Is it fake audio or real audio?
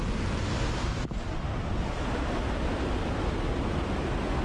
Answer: real